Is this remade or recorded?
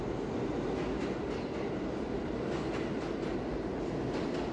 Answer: recorded